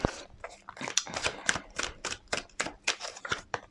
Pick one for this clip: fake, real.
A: fake